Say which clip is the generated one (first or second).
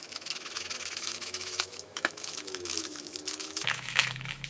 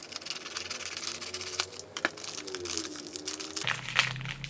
first